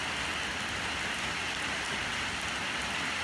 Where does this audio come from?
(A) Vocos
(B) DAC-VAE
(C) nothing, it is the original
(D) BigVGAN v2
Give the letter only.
C